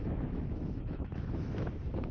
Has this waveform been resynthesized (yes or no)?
yes